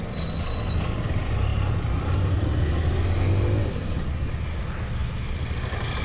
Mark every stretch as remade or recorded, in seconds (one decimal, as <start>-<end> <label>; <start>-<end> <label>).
0.0-6.0 recorded